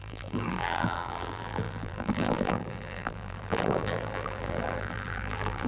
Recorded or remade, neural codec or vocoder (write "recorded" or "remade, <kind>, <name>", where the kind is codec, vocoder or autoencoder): remade, vocoder, BigVGAN v2